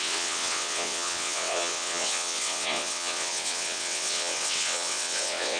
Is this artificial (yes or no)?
yes